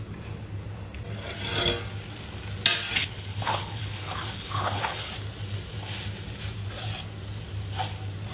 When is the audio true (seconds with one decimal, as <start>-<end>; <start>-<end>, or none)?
0.0-3.0; 5.1-8.3